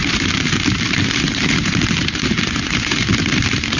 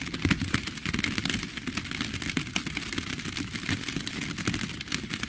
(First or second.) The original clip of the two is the second